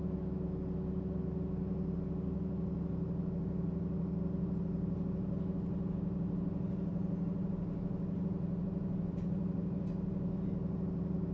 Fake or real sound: real